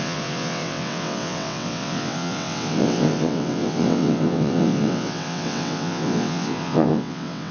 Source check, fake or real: fake